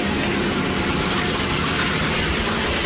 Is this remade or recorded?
recorded